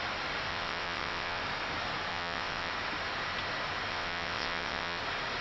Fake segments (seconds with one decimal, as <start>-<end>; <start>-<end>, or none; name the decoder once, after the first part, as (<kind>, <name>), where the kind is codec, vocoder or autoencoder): 0.5-1.4 (vocoder, WaveNeXt); 2.1-2.7; 3.9-5.0